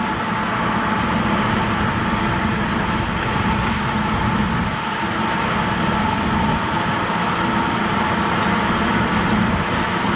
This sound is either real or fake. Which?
real